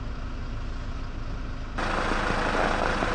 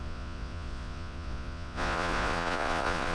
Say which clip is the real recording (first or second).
first